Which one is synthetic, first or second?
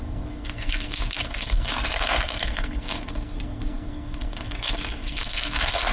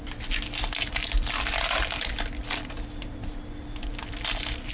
first